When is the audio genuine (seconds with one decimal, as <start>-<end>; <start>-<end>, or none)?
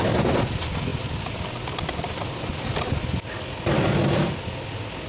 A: 0.0-5.1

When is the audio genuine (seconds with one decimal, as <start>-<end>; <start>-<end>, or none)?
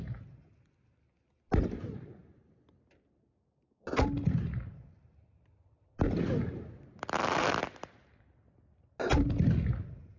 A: 0.0-10.2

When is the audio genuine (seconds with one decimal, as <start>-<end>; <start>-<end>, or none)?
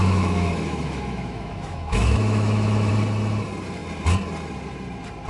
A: 2.9-5.3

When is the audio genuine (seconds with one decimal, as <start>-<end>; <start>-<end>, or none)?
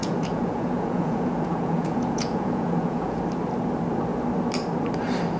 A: 3.2-5.4